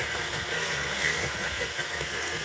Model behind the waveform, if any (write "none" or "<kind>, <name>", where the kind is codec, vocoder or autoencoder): codec, SNAC